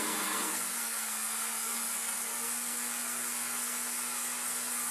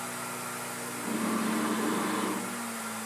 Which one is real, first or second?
second